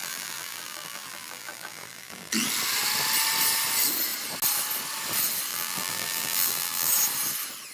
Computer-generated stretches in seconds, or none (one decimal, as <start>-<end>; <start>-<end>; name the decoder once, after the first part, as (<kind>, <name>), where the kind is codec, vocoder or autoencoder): 0.0-2.3 (vocoder, BigVGAN v2); 5.5-6.9